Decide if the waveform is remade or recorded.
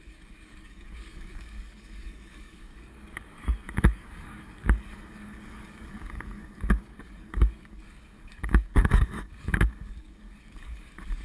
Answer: remade